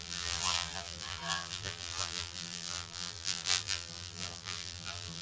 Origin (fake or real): fake